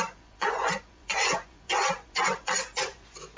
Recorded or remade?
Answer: remade